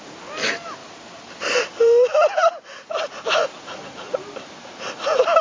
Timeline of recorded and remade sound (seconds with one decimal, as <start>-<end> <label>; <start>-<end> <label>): 0.0-0.8 recorded; 0.8-3.0 remade; 3.0-3.5 recorded; 3.5-4.9 remade; 4.9-5.4 recorded